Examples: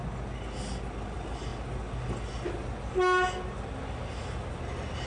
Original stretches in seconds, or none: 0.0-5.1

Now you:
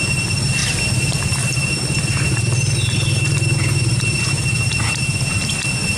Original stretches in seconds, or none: none

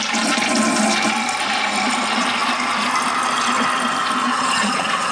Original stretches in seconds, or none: 0.0-4.2

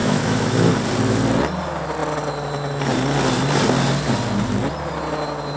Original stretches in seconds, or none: 0.7-5.6

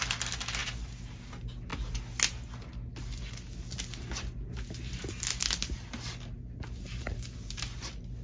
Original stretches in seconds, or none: 0.0-8.2